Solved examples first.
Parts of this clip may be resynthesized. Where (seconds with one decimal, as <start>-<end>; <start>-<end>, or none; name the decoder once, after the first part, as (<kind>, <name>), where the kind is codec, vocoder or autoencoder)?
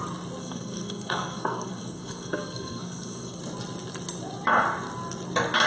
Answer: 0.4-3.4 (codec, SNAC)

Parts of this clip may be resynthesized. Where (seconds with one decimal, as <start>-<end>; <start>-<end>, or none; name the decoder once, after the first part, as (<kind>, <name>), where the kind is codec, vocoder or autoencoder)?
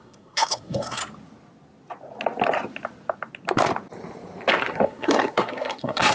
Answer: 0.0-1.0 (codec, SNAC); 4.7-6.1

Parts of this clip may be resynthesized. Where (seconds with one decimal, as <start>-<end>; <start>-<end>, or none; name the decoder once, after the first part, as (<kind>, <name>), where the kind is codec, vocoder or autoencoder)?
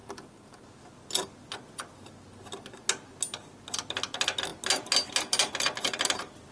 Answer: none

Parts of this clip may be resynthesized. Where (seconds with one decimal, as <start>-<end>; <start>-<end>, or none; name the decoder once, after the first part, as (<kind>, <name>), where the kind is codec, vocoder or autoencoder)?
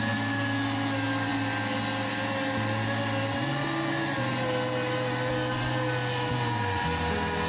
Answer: none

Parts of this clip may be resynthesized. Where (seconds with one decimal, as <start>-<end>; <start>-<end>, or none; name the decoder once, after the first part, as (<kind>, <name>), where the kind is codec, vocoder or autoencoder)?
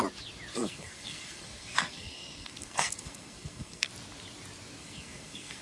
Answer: 0.5-3.9 (codec, SNAC); 4.8-5.6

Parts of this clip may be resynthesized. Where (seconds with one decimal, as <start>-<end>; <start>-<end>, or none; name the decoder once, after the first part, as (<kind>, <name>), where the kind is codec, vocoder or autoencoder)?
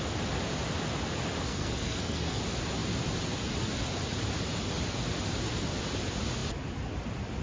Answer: 1.5-2.4 (codec, SNAC)